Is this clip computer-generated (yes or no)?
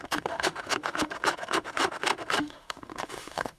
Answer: yes